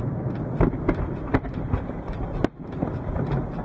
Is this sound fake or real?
real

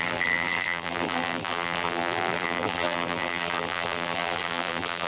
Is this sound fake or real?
fake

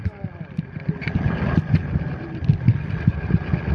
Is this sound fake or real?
real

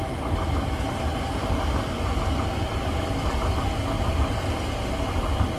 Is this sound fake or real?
real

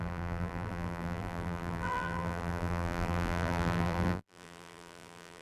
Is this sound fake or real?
fake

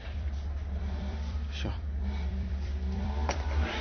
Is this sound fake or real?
fake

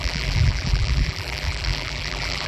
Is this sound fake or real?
fake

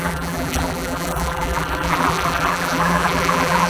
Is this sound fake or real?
fake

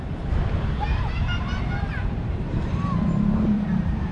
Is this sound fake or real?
fake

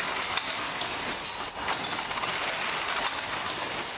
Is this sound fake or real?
real